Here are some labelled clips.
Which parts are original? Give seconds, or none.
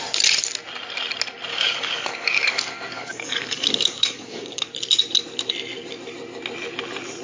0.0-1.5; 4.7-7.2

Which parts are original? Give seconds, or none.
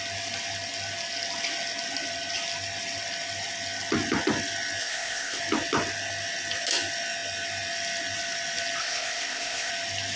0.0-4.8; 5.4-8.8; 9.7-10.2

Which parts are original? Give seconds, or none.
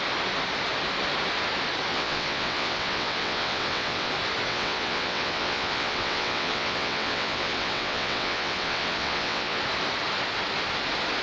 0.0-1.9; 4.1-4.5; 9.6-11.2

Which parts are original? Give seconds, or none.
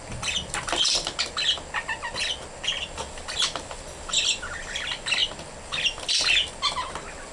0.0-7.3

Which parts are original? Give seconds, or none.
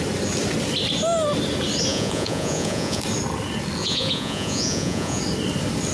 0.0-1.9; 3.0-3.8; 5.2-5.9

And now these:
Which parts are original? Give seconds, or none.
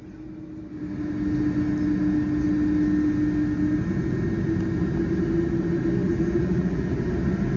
0.0-6.0; 7.1-7.6